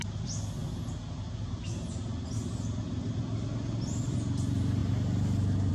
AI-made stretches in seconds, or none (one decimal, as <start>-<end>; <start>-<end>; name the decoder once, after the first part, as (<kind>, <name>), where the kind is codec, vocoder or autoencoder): none